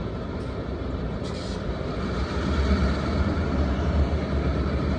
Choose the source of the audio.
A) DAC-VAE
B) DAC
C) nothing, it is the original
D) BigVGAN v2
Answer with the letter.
D